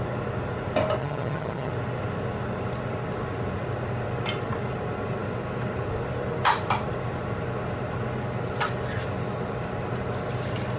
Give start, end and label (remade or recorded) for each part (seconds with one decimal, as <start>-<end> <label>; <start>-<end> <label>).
0.0-1.0 recorded; 1.0-1.7 remade; 1.7-10.8 recorded